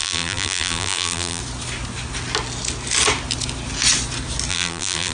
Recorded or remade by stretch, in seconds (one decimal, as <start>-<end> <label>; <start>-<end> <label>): 0.0-1.4 remade; 1.4-4.5 recorded; 4.5-5.1 remade